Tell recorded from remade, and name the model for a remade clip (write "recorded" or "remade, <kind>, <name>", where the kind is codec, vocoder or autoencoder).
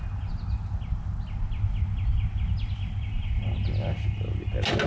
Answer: recorded